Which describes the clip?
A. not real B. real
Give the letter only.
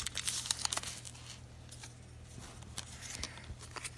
B